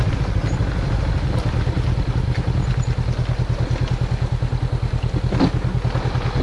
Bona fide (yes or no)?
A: yes